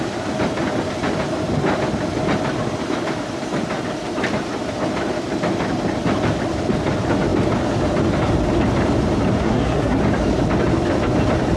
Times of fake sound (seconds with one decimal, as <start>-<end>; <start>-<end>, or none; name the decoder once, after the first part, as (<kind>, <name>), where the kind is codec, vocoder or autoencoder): 9.4-10.0 (codec, SNAC)